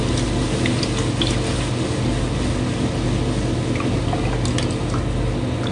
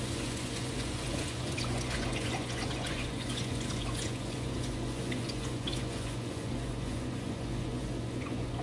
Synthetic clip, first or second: second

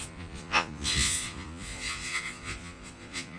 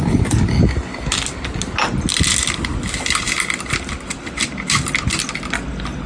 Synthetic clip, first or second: first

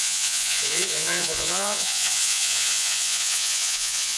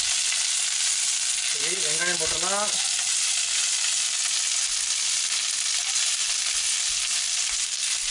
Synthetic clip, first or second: first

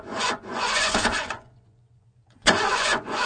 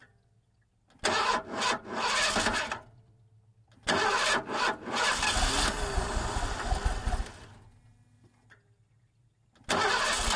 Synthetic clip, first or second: first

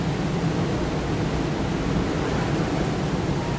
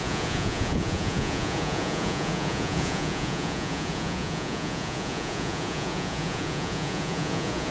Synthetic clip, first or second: second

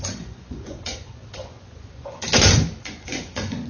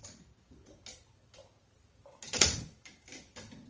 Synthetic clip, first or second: first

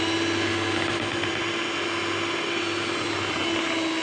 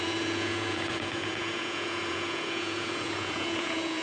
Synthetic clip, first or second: second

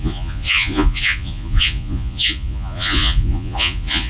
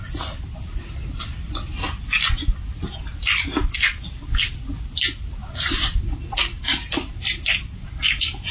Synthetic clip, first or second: first